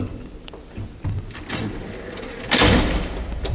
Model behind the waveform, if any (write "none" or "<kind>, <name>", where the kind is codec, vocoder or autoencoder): vocoder, BigVGAN v2